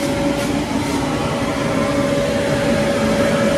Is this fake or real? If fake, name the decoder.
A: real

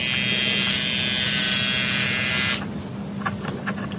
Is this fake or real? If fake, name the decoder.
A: real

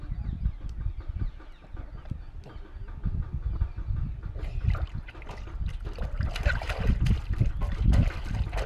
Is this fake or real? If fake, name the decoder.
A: real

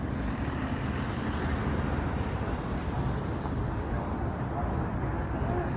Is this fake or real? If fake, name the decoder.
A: real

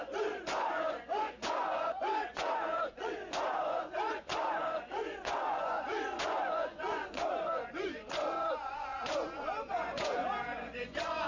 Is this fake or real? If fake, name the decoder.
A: fake, vocoder, Vocos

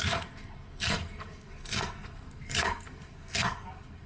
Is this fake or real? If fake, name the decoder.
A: fake, codec, SNAC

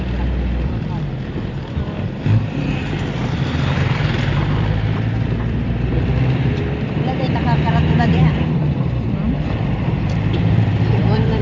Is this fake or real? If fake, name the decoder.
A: fake, vocoder, BigVGAN v2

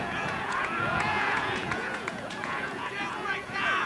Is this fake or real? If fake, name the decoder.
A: fake, vocoder, Vocos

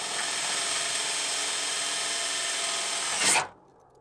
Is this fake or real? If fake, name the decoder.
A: real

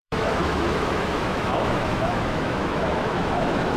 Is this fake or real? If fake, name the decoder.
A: fake, autoencoder, DAC-VAE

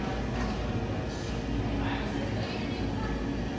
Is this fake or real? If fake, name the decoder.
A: real